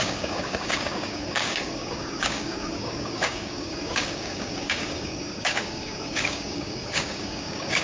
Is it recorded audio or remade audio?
remade